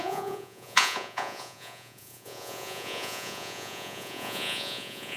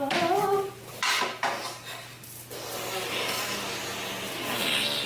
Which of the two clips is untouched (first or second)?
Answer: second